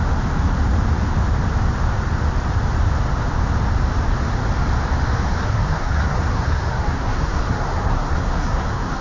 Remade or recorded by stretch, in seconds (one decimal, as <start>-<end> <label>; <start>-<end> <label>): 0.0-5.4 recorded; 5.4-9.0 remade